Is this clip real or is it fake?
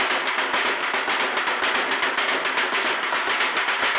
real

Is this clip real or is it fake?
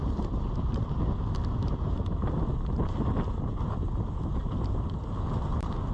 real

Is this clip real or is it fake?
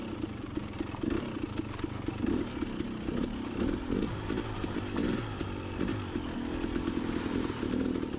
real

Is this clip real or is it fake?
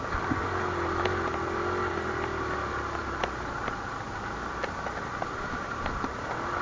real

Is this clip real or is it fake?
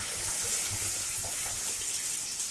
real